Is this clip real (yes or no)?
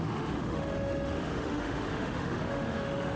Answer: no